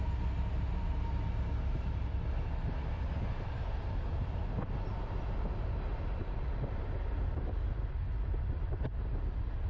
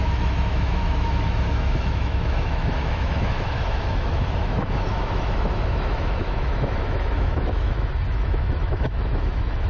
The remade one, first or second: second